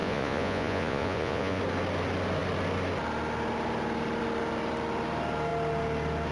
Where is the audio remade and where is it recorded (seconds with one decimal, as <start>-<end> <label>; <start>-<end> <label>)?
0.0-1.6 remade; 1.6-6.3 recorded